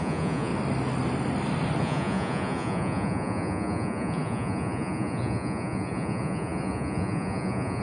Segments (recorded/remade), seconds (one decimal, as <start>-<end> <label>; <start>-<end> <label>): 0.0-0.5 remade; 0.5-1.8 recorded; 1.8-7.8 remade